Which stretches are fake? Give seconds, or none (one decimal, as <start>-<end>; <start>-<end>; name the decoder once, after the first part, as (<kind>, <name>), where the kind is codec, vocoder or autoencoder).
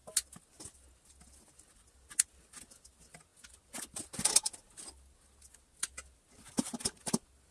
none